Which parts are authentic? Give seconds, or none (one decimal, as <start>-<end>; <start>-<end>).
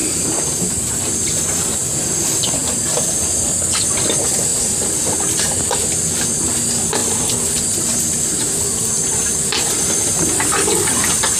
0.9-4.5; 6.5-7.0; 9.5-11.4